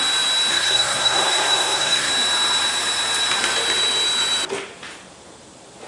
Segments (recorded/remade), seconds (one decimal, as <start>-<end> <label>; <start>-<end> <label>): 0.0-0.5 recorded; 0.5-2.1 remade; 2.1-5.9 recorded